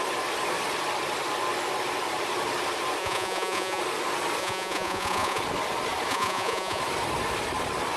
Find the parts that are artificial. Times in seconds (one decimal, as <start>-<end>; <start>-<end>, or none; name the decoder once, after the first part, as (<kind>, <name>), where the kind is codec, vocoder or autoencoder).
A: 3.0-3.8 (vocoder, Vocos); 4.4-5.4; 6.1-6.8

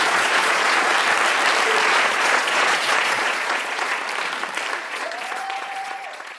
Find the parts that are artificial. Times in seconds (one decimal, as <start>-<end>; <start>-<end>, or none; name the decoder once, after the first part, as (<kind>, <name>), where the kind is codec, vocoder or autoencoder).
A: 0.0-0.9 (vocoder, Vocos); 1.8-4.0; 4.8-6.4